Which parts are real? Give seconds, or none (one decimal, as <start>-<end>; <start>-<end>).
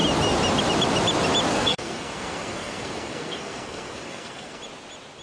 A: 0.0-1.5; 4.6-5.2